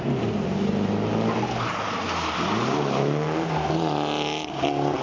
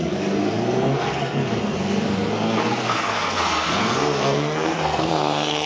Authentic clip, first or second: first